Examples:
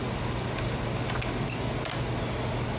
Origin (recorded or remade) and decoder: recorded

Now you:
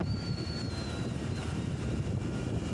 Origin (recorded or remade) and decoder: remade, vocoder, BigVGAN v2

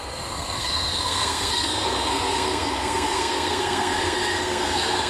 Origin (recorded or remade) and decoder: remade, codec, SNAC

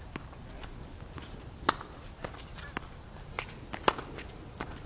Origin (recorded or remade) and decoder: recorded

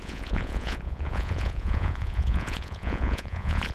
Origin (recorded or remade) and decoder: remade, vocoder, Vocos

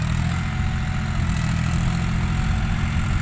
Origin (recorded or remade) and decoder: recorded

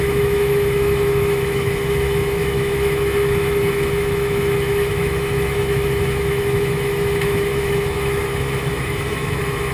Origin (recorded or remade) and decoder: remade, autoencoder, DAC-VAE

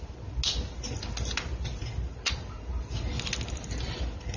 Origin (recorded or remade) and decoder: recorded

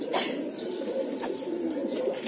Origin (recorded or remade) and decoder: remade, vocoder, BigVGAN v2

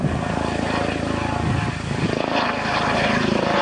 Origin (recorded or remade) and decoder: recorded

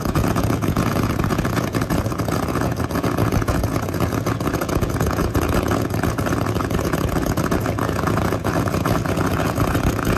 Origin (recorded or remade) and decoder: remade, vocoder, Vocos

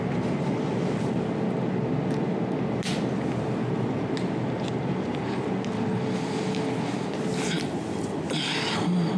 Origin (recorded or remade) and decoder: recorded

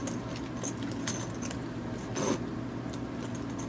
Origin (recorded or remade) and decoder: recorded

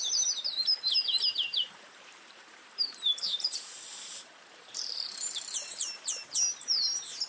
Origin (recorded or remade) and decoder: remade, vocoder, BigVGAN v2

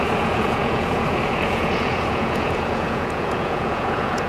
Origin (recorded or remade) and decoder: remade, vocoder, Vocos